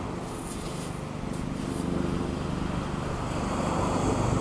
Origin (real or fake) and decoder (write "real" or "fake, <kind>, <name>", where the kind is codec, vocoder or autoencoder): real